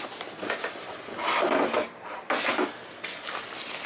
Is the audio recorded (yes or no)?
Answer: yes